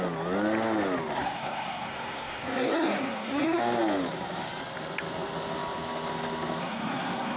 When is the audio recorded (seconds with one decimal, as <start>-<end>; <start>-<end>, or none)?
0.0-1.2; 3.6-6.6